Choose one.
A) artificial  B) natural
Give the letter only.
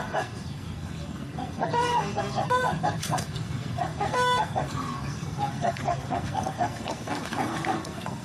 A